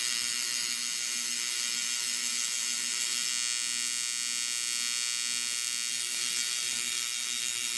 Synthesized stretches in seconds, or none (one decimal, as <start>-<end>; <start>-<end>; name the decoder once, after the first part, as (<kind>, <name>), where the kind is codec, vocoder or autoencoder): 0.0-3.3 (autoencoder, DAC-VAE); 5.9-7.8